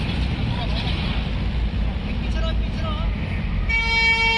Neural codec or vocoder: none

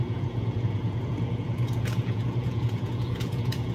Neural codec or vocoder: vocoder, Vocos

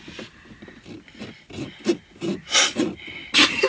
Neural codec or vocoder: none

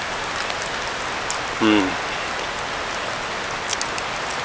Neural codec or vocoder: none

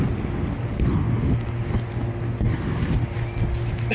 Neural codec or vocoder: none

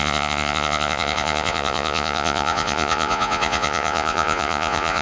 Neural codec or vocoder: vocoder, Vocos